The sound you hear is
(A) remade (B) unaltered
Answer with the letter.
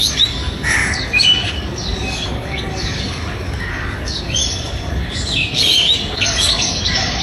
A